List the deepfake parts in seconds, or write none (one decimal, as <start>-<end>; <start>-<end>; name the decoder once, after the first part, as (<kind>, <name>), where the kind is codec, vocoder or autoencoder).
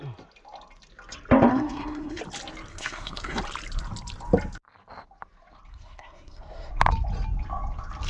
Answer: 1.5-2.2 (codec, SNAC); 2.7-3.4; 5.7-6.7